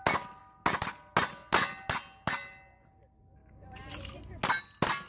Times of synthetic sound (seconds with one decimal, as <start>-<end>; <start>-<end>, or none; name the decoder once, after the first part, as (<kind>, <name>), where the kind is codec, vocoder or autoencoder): none